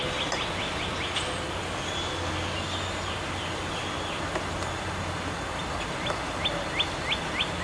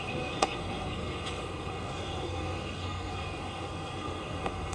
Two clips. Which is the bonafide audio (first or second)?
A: first